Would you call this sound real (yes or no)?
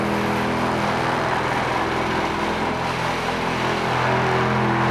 yes